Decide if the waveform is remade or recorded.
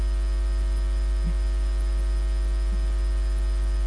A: recorded